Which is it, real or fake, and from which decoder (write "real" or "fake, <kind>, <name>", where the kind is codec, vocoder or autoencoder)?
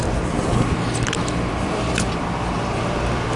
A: fake, vocoder, BigVGAN v2